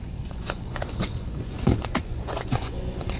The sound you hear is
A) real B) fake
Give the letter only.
B